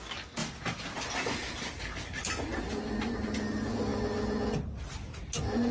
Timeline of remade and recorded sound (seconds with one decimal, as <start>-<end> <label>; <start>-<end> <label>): 0.0-5.7 recorded